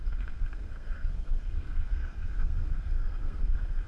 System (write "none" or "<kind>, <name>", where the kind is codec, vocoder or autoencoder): codec, SNAC